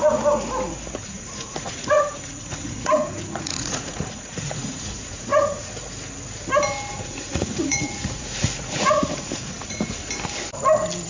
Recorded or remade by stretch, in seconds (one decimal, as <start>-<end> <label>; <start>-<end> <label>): 0.0-1.0 recorded; 1.0-5.7 remade; 5.7-6.9 recorded; 6.9-10.1 remade; 10.1-11.1 recorded